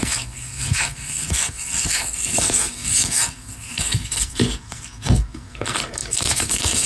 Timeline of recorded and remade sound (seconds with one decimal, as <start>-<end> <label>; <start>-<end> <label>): 0.0-6.9 remade